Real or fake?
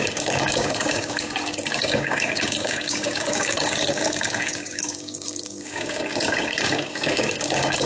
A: fake